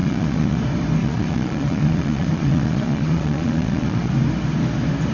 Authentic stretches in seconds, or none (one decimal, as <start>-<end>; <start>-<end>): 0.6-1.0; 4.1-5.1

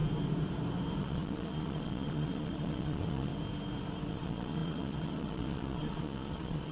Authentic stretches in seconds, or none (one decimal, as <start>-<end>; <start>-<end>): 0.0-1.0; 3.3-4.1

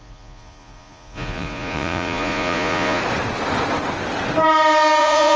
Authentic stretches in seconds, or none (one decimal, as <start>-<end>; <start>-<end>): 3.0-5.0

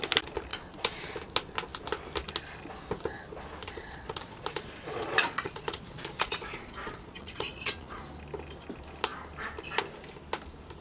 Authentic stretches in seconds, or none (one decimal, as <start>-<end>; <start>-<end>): 0.0-0.5; 1.1-3.6; 8.0-10.8

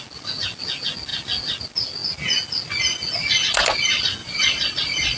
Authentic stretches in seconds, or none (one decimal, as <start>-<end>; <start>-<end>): 0.0-4.2